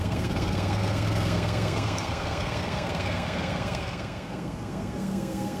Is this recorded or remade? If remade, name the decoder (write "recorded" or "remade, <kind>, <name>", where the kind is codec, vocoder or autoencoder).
remade, codec, SNAC